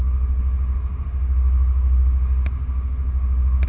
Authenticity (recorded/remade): recorded